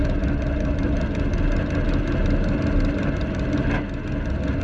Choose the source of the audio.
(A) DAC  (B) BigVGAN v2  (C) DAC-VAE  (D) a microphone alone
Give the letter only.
D